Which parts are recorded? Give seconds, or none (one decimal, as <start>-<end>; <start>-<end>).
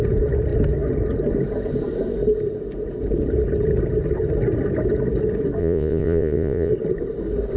0.0-5.6; 6.7-7.6